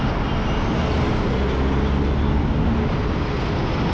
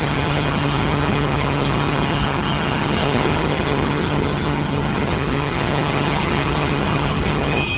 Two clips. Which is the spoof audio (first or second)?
second